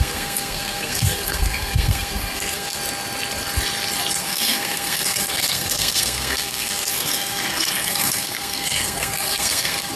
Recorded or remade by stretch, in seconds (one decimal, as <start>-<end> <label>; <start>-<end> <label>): 0.0-2.8 remade; 2.8-4.2 recorded; 4.2-10.0 remade